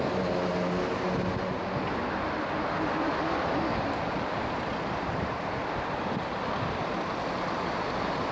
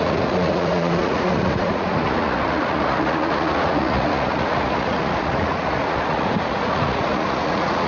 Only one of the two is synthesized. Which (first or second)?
second